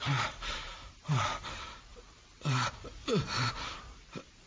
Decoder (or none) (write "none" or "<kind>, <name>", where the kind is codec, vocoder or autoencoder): vocoder, BigVGAN v2